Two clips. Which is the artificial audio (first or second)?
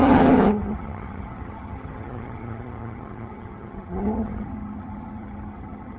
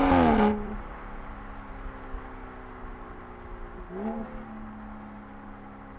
first